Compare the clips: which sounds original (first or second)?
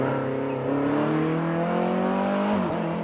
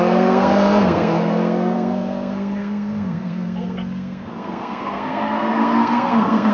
first